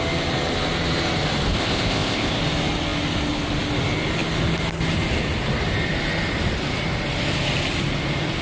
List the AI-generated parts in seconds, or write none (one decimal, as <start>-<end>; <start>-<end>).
1.5-2.4